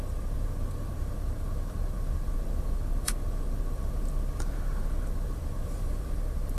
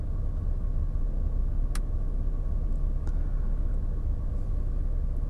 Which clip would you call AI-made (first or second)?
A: first